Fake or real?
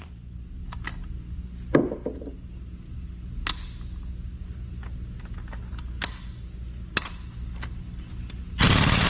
real